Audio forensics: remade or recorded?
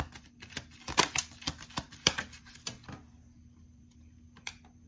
recorded